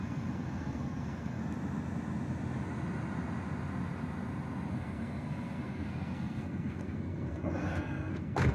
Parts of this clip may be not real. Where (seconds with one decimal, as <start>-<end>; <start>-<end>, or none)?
0.0-1.4; 4.7-8.5